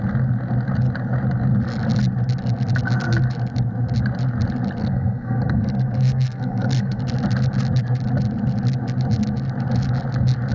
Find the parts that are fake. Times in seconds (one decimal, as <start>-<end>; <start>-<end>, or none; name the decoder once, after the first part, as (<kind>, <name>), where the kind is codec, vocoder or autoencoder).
4.8-7.0 (codec, SNAC)